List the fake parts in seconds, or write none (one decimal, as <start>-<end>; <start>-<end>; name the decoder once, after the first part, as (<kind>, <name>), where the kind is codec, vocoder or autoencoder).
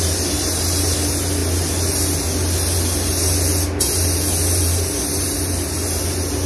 none